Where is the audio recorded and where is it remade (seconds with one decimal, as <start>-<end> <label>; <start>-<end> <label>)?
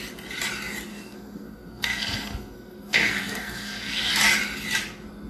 0.0-0.9 recorded; 0.9-4.1 remade; 4.1-5.3 recorded